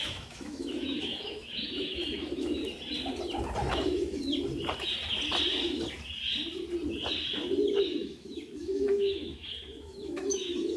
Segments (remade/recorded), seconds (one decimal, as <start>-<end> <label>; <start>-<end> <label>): 0.0-2.6 remade; 2.6-3.7 recorded; 3.7-4.2 remade; 4.2-8.0 recorded; 8.0-10.8 remade